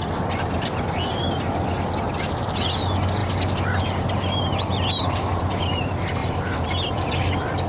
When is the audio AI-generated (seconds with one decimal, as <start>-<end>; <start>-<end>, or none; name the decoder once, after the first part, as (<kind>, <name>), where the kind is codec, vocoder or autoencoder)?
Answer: 6.2-7.3 (vocoder, BigVGAN v2)